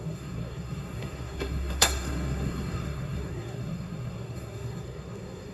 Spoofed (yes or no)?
yes